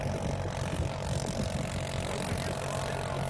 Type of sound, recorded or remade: recorded